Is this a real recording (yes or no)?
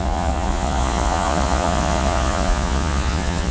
no